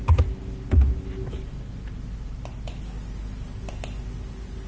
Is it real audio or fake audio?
real